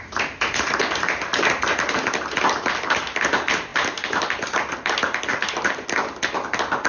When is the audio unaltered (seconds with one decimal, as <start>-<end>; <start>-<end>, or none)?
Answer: 0.0-6.9